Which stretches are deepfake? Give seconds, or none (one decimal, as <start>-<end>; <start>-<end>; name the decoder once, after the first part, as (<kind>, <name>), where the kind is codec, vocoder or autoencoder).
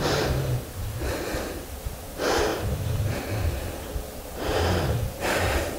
2.5-3.2 (vocoder, BigVGAN v2); 4.5-5.8